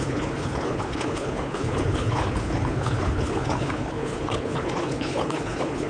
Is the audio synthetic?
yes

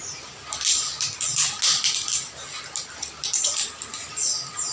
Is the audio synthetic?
no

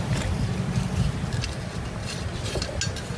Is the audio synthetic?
no